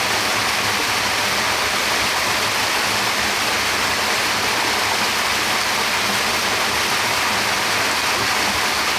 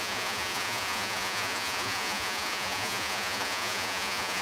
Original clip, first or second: first